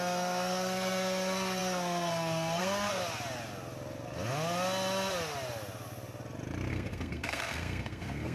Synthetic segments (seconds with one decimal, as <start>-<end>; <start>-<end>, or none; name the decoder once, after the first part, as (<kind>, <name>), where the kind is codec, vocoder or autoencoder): 0.0-3.0 (codec, SNAC); 6.7-8.3